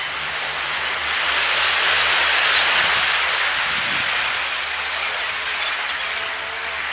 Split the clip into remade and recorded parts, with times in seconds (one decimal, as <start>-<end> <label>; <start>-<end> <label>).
0.0-5.0 recorded; 5.0-5.5 remade; 5.5-6.9 recorded